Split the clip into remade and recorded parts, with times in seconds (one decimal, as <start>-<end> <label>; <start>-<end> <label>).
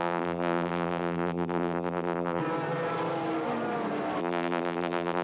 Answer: 0.0-2.4 remade; 2.4-4.2 recorded; 4.2-5.2 remade